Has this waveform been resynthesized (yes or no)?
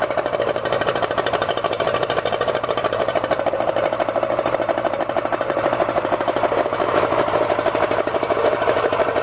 yes